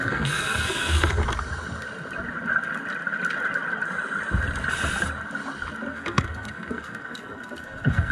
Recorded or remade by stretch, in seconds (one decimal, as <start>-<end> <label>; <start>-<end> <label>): 0.0-1.2 remade; 1.2-5.9 recorded; 5.9-8.1 remade